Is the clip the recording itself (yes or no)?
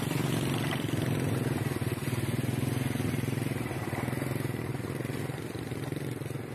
yes